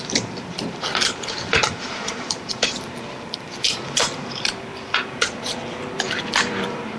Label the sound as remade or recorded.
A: remade